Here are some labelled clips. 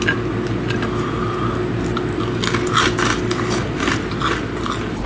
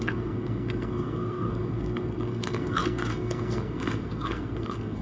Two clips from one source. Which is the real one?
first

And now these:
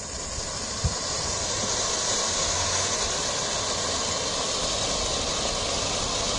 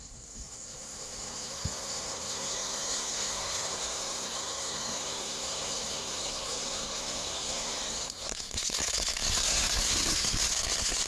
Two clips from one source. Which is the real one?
first